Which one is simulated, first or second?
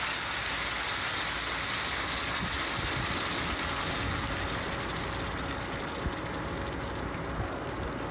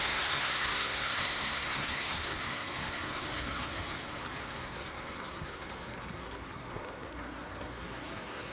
second